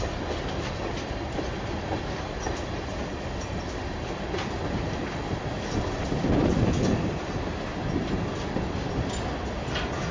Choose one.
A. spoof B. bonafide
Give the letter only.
B